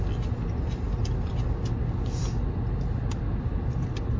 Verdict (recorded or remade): recorded